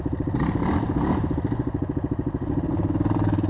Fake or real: real